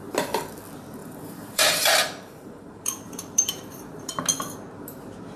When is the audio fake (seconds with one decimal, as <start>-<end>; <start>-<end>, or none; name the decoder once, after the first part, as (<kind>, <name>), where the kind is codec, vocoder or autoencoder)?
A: 1.0-4.2 (vocoder, BigVGAN v2)